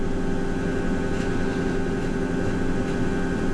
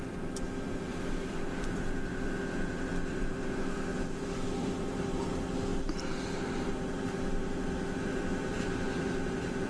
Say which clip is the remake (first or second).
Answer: second